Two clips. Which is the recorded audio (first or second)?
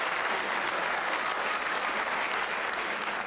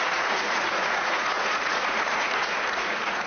first